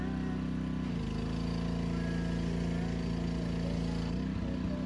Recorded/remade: recorded